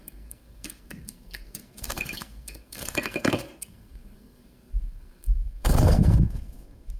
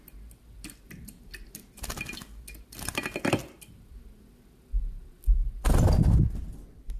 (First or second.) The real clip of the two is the second